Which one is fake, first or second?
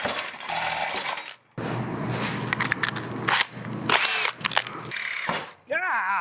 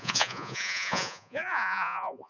second